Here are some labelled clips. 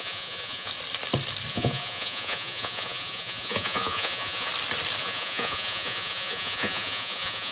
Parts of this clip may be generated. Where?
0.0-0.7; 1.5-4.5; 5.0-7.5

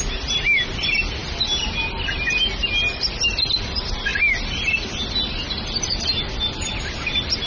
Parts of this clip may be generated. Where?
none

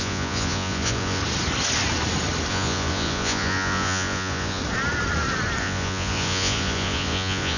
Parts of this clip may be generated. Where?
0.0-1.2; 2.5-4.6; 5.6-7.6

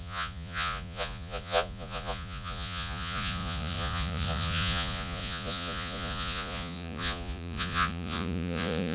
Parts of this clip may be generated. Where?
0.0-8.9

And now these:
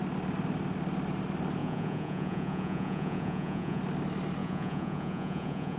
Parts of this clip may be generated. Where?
1.6-3.8; 4.4-5.8

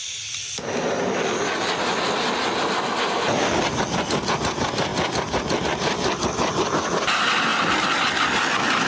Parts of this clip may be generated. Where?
none